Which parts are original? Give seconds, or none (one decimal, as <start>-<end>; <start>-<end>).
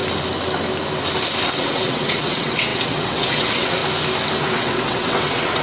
0.0-1.4; 3.8-4.4